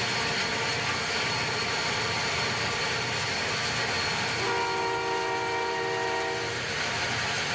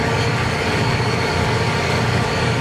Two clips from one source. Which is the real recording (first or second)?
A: first